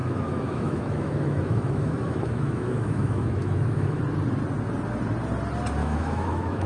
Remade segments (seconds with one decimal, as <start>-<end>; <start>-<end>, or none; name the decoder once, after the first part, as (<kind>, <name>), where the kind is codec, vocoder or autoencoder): 0.0-4.0 (autoencoder, DAC-VAE); 5.8-6.7